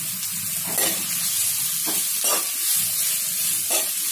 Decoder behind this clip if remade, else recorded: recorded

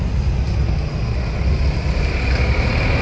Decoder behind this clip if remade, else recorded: recorded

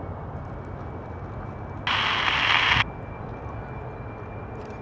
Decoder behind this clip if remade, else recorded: recorded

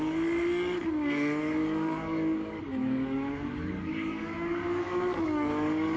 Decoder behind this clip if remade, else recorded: remade, codec, DAC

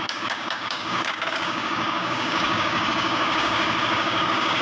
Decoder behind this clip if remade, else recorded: remade, codec, DAC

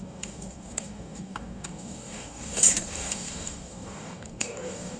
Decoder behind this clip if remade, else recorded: remade, codec, DAC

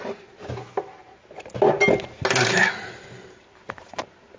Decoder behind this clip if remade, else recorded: recorded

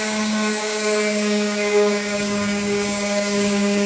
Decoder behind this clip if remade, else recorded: remade, codec, DAC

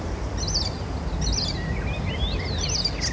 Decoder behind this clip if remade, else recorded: recorded